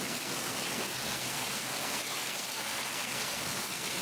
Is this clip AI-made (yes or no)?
yes